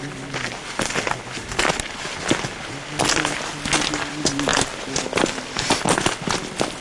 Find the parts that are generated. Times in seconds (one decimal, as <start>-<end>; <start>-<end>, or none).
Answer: none